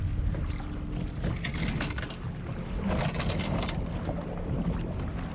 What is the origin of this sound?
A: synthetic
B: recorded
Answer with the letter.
B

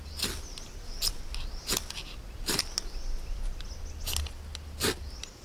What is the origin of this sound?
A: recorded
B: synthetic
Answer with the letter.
A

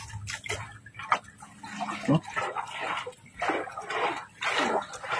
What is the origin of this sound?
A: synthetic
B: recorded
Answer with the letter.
B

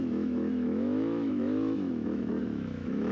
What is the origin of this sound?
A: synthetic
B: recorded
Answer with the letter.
A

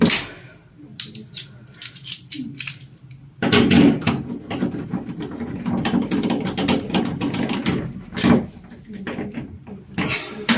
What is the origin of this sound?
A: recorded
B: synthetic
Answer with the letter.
A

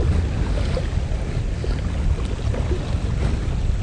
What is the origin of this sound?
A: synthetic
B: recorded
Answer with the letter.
B